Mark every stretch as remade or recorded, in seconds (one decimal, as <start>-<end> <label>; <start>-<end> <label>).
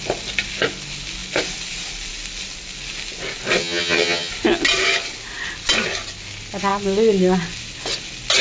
0.0-3.6 recorded; 3.6-4.3 remade; 4.3-8.4 recorded